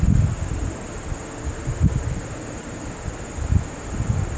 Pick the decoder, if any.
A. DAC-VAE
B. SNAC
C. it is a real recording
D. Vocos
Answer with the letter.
C